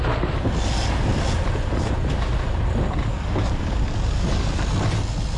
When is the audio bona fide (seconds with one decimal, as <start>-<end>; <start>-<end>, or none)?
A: 0.0-3.1; 4.6-5.4